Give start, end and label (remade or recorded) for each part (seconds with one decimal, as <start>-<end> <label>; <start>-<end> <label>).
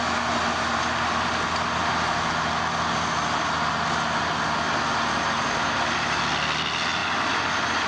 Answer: 0.0-7.9 recorded